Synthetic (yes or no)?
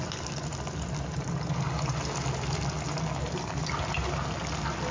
no